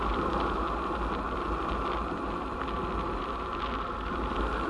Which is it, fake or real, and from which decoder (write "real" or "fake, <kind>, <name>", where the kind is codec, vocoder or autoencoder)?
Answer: real